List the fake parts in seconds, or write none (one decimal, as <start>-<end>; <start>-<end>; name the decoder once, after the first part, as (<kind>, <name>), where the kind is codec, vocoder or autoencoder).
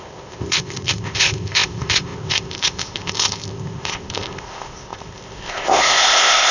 0.0-6.5 (codec, ZipCodec)